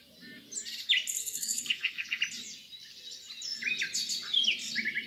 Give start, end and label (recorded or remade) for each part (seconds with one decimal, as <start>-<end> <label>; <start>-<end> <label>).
0.0-1.2 recorded; 1.2-2.2 remade; 2.2-5.1 recorded